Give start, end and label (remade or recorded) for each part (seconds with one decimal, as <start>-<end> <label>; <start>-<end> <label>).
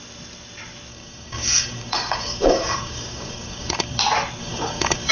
0.0-0.9 recorded; 0.9-4.0 remade; 4.0-4.4 recorded; 4.4-5.1 remade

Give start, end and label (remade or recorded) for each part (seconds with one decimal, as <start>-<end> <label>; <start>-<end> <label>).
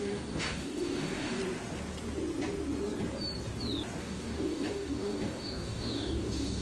0.0-1.4 remade; 1.4-4.0 recorded; 4.0-6.6 remade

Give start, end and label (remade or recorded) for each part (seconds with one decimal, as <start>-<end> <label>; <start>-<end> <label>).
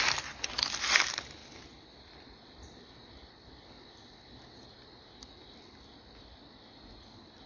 0.0-7.5 recorded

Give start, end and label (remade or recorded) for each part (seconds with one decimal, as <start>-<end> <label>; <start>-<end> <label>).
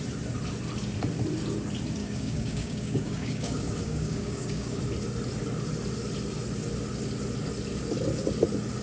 0.0-2.0 recorded; 2.0-4.8 remade; 4.8-8.8 recorded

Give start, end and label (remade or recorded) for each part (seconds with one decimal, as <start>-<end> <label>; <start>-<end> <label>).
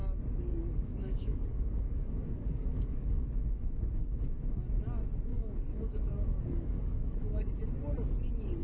0.0-0.5 recorded; 0.5-3.2 remade; 3.2-5.3 recorded; 5.3-7.5 remade; 7.5-8.6 recorded